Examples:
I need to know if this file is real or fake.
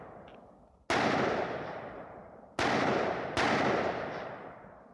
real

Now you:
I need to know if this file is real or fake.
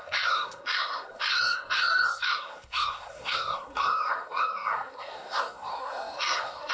fake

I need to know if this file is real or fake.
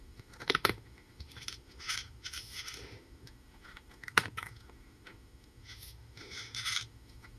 fake